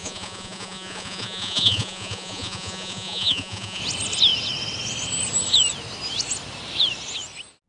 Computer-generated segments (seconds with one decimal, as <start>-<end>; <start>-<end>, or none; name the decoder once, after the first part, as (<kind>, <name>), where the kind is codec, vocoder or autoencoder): 0.0-3.8 (vocoder, Vocos)